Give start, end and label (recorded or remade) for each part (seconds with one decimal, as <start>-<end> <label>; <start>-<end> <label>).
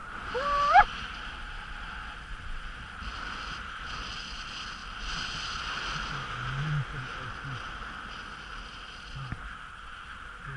0.0-0.8 remade; 0.8-10.6 recorded